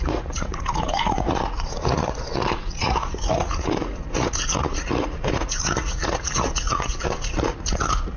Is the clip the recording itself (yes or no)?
no